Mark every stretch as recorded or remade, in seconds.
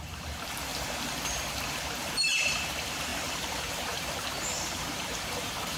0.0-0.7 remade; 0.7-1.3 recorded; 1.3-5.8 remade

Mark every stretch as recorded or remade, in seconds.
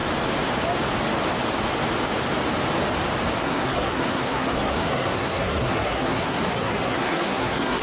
0.0-3.4 recorded; 3.4-7.8 remade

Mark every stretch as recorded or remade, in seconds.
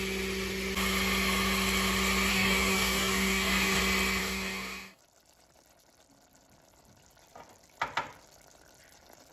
0.0-2.3 recorded; 2.3-3.8 remade; 3.8-4.2 recorded; 4.2-5.0 remade; 5.0-9.3 recorded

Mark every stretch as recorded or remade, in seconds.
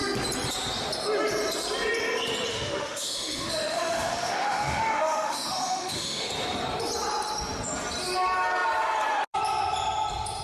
0.0-2.5 recorded; 2.5-6.3 remade; 6.3-10.4 recorded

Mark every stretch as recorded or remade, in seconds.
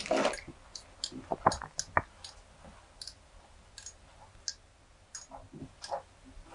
0.0-6.5 recorded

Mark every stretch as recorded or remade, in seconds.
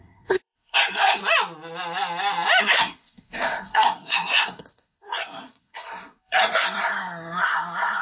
0.0-1.2 remade; 1.2-2.6 recorded; 2.6-8.0 remade